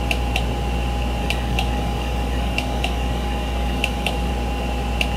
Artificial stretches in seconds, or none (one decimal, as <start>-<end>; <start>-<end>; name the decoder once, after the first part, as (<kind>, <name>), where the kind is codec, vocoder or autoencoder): 1.2-4.3 (codec, DAC)

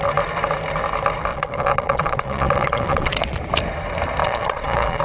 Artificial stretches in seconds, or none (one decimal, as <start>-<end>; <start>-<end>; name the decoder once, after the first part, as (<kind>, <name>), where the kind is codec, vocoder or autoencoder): 1.3-3.4 (vocoder, Vocos); 4.2-5.0

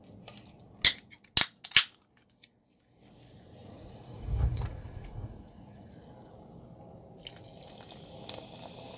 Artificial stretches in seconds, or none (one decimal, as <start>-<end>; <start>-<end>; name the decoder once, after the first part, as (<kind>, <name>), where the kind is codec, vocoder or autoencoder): 3.6-5.9 (vocoder, Vocos)

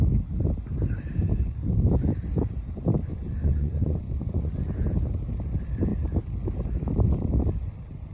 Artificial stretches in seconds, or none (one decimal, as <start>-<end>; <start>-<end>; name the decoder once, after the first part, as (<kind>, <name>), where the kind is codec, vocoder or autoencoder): 3.1-4.5 (vocoder, Vocos)

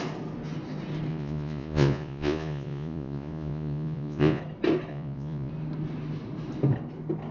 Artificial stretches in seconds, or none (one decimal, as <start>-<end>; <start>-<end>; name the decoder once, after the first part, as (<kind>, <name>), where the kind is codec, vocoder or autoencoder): 1.1-4.4 (vocoder, Vocos); 4.9-5.5

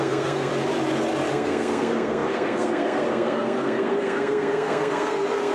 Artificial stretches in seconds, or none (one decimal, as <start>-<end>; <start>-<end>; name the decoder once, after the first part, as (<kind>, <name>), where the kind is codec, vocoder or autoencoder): 0.0-0.5 (codec, SNAC); 1.3-5.5